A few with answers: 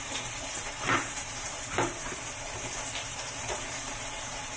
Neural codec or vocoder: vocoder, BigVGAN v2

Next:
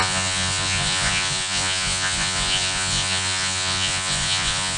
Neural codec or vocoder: vocoder, Vocos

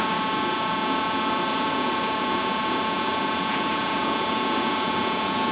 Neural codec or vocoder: vocoder, Vocos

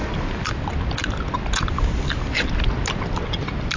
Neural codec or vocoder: none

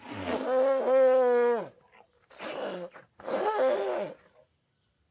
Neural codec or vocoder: none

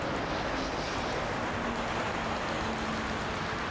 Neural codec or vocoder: none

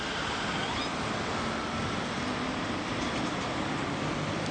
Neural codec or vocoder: none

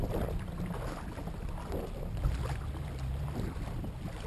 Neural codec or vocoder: none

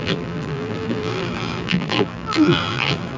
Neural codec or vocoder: vocoder, BigVGAN v2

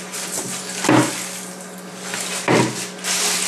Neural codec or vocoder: none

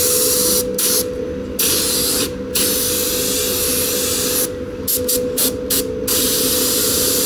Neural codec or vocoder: none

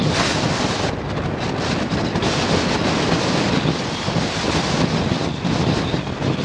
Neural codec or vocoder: none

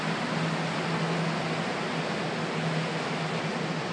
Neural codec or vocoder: none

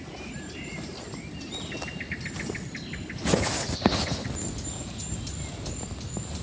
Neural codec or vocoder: none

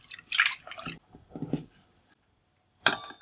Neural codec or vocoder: none